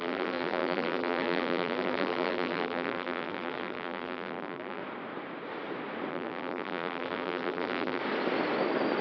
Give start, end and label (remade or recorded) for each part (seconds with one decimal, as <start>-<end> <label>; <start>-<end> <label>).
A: 0.0-4.8 remade; 4.8-6.1 recorded; 6.1-8.0 remade; 8.0-9.0 recorded